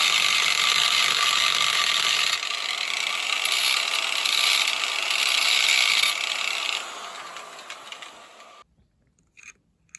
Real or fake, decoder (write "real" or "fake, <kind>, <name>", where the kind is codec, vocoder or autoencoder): real